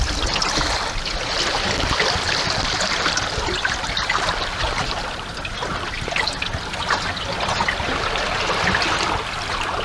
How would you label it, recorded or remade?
recorded